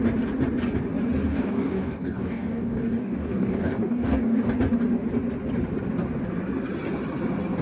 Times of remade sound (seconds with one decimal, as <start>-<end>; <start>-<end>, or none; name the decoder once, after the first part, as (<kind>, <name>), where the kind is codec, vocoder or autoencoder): 1.3-4.5 (codec, DAC)